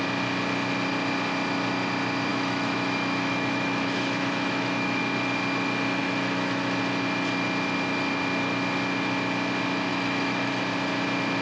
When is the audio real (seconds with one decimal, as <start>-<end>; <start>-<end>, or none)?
0.0-2.3; 5.0-6.0; 6.8-9.9; 10.6-11.4